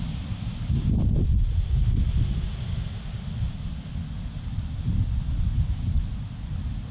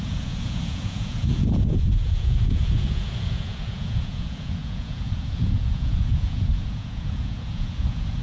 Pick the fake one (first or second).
second